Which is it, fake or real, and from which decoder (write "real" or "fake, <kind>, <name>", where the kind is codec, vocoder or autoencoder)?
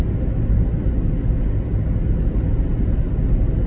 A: real